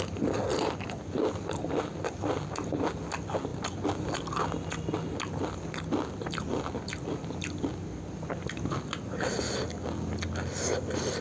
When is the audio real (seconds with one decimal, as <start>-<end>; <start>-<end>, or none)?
0.0-11.2